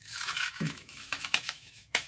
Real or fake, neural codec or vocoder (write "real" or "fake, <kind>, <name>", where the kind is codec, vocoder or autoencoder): fake, autoencoder, DAC-VAE